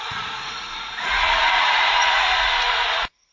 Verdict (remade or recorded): remade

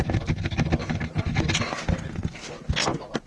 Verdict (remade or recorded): recorded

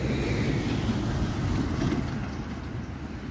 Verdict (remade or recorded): recorded